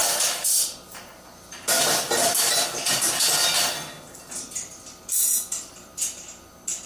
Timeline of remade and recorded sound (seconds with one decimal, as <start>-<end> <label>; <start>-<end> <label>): 0.0-1.0 remade; 1.0-2.2 recorded; 2.2-3.3 remade; 3.3-6.9 recorded